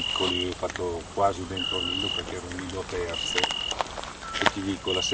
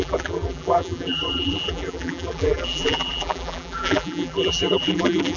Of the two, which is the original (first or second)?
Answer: first